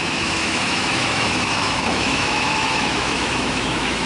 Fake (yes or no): yes